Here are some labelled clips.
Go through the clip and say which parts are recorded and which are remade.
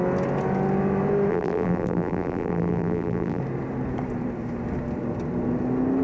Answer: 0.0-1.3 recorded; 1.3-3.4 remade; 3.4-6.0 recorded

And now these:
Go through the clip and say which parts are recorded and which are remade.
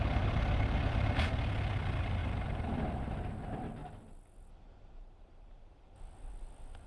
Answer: 0.0-6.9 remade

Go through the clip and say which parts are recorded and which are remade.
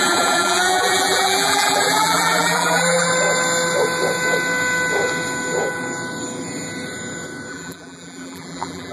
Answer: 0.0-3.1 remade; 3.1-7.5 recorded; 7.5-8.9 remade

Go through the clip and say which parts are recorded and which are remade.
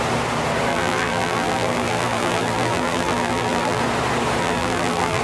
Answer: 0.0-0.7 recorded; 0.7-3.8 remade; 3.8-4.4 recorded; 4.4-5.2 remade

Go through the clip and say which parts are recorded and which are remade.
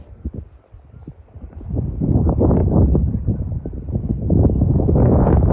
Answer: 0.0-2.6 recorded; 2.6-3.3 remade; 3.3-5.5 recorded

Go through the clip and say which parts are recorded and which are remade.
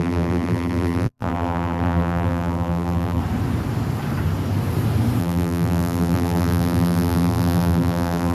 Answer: 0.0-3.2 remade; 3.2-5.2 recorded; 5.2-8.3 remade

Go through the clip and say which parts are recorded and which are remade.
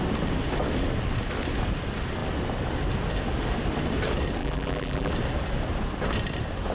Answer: 0.0-4.4 recorded; 4.4-5.1 remade; 5.1-6.7 recorded